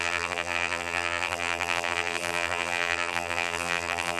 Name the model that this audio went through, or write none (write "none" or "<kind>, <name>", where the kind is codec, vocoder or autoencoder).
vocoder, BigVGAN v2